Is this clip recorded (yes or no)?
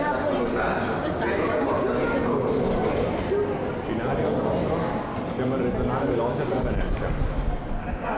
yes